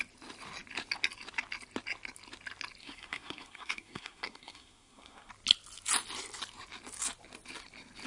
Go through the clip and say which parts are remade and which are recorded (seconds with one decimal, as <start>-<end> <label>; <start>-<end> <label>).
0.0-2.8 recorded; 2.8-5.3 remade; 5.3-8.1 recorded